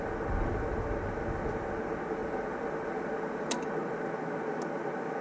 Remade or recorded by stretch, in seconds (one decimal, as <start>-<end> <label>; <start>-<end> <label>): 0.0-5.2 recorded